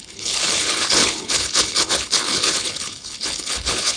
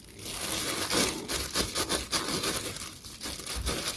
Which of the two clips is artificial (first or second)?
first